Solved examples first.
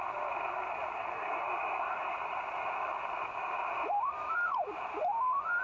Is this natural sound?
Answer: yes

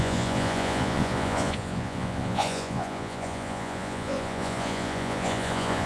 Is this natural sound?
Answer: no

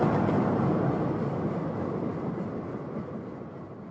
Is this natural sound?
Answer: yes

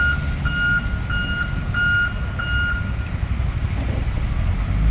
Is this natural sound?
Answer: yes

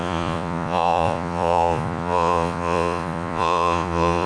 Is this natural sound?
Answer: no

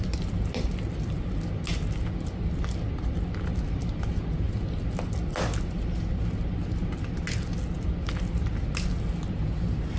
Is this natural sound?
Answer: yes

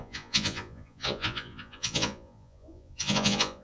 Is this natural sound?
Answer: no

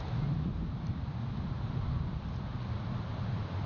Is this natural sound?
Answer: yes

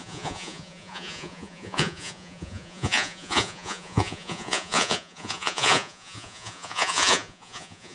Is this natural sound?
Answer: no